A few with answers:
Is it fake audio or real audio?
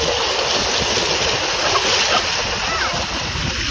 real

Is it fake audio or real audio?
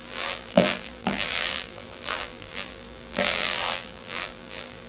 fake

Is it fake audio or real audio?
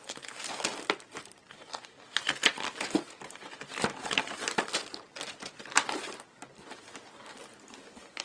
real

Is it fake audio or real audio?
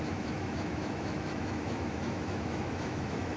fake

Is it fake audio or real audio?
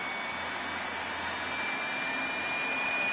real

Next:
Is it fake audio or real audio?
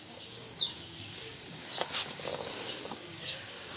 fake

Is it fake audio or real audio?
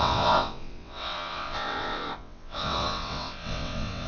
fake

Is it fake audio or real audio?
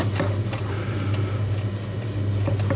real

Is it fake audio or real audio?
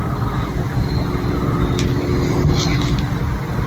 real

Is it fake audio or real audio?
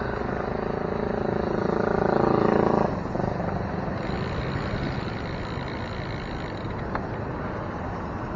real